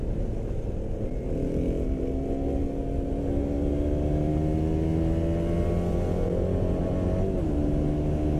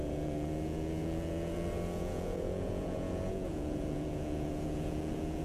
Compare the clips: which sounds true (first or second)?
first